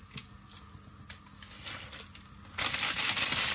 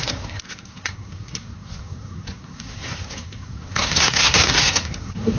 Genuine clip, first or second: first